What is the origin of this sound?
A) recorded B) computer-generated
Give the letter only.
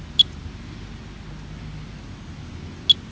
A